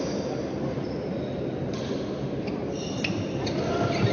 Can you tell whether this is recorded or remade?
recorded